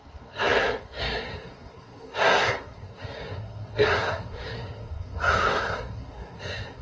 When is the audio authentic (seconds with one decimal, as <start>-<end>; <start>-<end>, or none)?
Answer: none

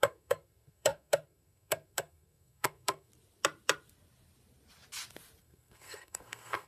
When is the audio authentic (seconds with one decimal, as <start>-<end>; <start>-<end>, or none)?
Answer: 3.1-5.4

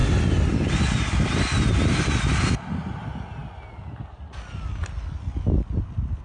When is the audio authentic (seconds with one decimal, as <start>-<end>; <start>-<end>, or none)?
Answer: 0.0-6.2